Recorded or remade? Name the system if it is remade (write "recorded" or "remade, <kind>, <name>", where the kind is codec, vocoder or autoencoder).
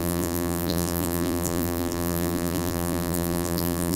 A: remade, vocoder, BigVGAN v2